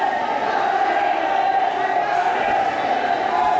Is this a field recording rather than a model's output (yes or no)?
yes